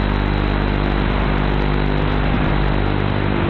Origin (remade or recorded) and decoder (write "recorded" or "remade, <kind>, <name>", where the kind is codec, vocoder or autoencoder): recorded